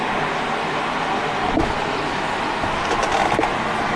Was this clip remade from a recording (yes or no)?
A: no